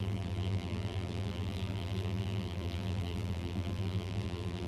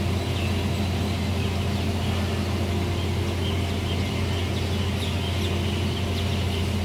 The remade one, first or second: first